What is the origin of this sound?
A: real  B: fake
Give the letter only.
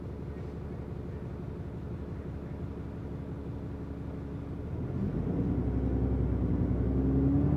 A